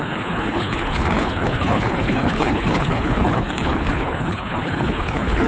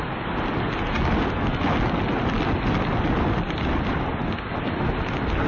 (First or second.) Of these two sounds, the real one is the second